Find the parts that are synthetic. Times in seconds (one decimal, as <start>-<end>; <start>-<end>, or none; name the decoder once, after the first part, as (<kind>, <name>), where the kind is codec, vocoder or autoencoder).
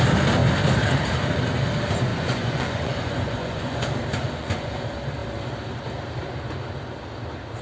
2.1-3.8 (vocoder, Vocos); 4.2-4.7